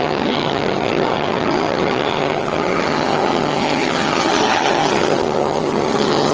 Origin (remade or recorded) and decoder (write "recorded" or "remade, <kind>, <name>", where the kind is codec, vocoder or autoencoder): remade, vocoder, HiFi-GAN